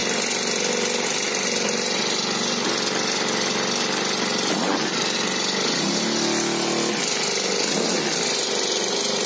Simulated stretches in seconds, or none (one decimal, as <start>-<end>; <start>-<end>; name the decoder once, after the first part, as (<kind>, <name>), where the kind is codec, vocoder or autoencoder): none